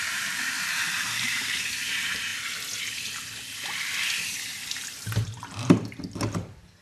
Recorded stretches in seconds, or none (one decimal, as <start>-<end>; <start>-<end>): 2.3-6.8